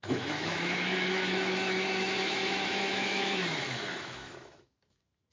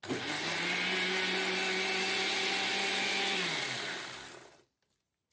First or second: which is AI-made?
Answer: first